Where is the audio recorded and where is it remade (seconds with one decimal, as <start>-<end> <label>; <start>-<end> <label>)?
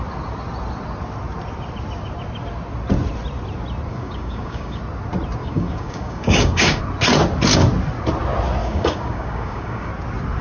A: 0.0-3.9 recorded; 3.9-4.8 remade; 4.8-5.4 recorded; 5.4-6.8 remade; 6.8-8.6 recorded; 8.6-9.9 remade; 9.9-10.4 recorded